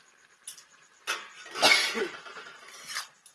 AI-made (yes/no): no